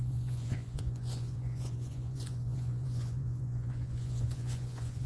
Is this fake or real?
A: fake